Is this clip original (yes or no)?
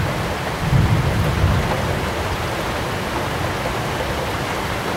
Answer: yes